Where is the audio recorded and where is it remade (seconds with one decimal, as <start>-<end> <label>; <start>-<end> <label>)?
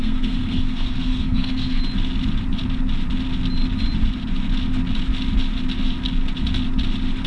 0.0-1.8 remade; 1.8-7.3 recorded